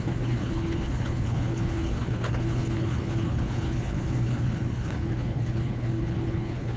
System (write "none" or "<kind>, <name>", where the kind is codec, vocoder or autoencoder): codec, HILCodec